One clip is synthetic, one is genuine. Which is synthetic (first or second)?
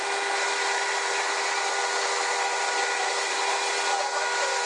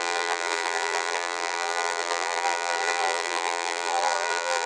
second